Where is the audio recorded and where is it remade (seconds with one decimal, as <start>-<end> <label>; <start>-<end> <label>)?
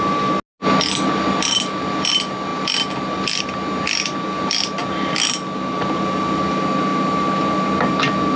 0.0-4.8 recorded; 4.8-6.4 remade; 6.4-8.4 recorded